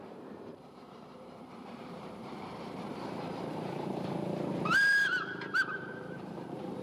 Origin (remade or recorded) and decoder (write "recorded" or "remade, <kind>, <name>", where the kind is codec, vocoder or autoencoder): remade, vocoder, BigVGAN v2